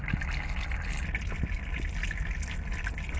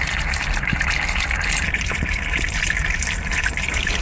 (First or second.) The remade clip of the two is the second